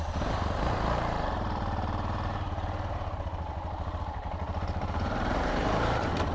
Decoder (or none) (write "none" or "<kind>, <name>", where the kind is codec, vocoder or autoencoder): vocoder, BigVGAN v2